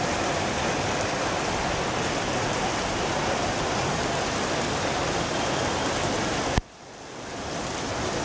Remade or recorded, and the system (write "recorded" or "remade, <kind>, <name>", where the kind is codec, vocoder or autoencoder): recorded